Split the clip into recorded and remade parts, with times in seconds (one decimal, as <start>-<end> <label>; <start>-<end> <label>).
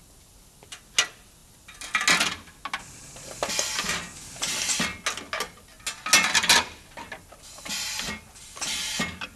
0.0-9.4 recorded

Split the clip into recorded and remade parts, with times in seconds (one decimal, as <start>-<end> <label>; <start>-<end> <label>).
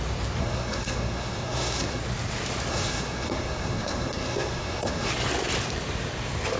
0.0-0.4 recorded; 0.4-2.0 remade; 2.0-2.7 recorded; 2.7-5.1 remade; 5.1-6.6 recorded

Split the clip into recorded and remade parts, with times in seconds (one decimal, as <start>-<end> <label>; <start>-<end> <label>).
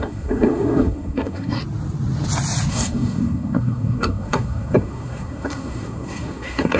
0.0-1.6 remade; 1.6-2.7 recorded; 2.7-6.8 remade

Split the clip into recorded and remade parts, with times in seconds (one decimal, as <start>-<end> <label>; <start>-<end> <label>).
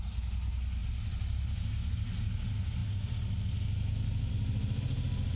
0.0-5.4 recorded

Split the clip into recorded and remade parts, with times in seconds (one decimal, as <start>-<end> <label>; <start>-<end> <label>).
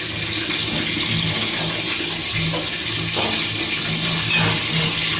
0.0-5.2 recorded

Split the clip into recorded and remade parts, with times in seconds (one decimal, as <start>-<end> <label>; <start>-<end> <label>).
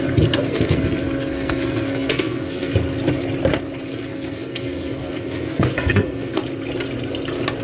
0.0-2.7 remade; 2.7-3.9 recorded; 3.9-6.4 remade; 6.4-7.6 recorded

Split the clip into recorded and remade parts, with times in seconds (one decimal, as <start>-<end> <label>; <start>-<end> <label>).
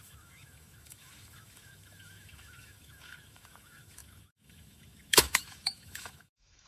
0.0-6.7 remade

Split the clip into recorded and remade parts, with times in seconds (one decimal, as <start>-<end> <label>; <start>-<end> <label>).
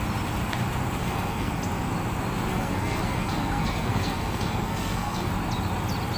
0.0-1.0 recorded; 1.0-1.5 remade; 1.5-2.5 recorded; 2.5-5.3 remade; 5.3-6.2 recorded